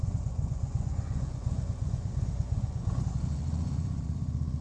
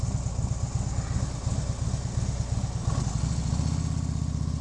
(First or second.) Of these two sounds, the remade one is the first